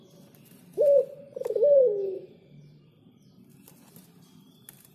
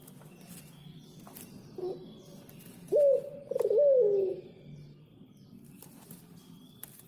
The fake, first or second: first